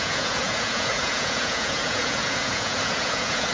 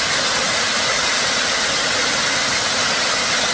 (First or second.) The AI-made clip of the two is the first